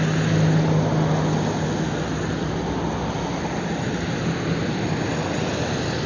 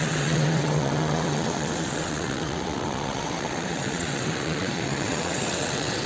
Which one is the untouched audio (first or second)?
first